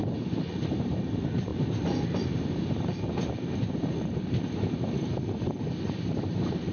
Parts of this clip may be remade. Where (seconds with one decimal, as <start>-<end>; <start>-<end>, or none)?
0.0-6.7